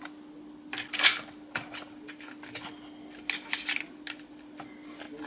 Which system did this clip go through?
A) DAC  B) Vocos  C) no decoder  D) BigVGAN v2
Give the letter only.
C